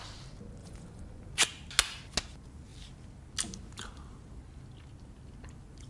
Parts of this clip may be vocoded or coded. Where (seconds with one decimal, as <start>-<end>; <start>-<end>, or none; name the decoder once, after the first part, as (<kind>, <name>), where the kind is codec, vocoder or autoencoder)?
0.6-1.2 (vocoder, Vocos)